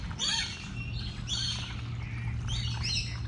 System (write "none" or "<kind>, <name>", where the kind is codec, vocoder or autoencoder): none